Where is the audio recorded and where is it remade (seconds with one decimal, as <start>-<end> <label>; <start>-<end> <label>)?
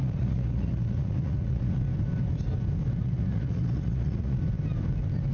0.0-1.8 remade; 1.8-3.0 recorded; 3.0-4.4 remade; 4.4-5.3 recorded